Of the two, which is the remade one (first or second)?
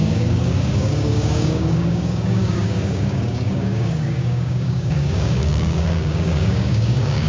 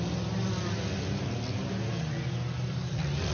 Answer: first